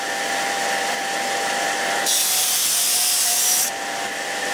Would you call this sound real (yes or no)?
no